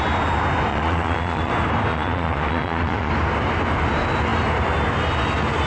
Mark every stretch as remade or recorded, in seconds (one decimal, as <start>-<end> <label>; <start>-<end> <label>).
0.0-0.7 recorded; 0.7-1.5 remade; 1.5-1.9 recorded; 1.9-3.1 remade; 3.1-5.7 recorded